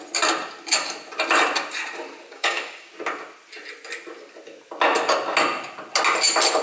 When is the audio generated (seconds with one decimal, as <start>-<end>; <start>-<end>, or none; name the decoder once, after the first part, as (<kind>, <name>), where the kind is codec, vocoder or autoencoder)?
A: 2.3-2.9 (codec, DAC)